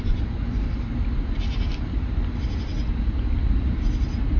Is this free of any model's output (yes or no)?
yes